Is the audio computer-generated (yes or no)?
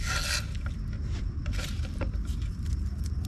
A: no